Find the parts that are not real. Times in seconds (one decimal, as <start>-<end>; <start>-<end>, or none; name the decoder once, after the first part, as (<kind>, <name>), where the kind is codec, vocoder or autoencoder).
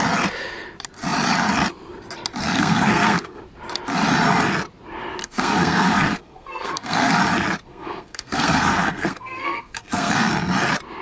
2.4-3.4 (codec, SNAC); 5.2-7.2; 7.7-10.3